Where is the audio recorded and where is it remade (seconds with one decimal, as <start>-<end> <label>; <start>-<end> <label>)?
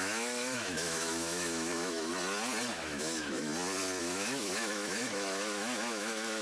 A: 0.0-2.1 remade; 2.1-2.7 recorded; 2.7-3.5 remade; 3.5-4.0 recorded; 4.0-6.4 remade